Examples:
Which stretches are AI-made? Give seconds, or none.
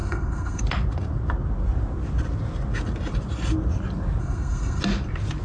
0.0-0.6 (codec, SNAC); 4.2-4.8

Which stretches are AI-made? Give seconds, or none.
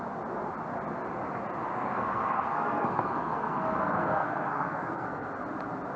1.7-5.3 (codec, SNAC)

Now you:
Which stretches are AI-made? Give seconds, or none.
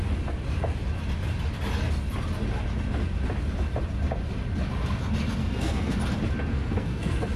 5.4-6.0 (codec, SNAC); 6.5-7.4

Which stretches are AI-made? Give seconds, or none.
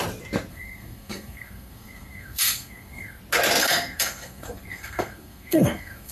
0.5-3.2 (codec, SNAC); 3.6-6.1